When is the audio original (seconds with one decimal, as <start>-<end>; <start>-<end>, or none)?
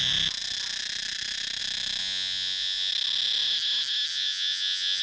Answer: 0.0-2.0; 2.9-4.1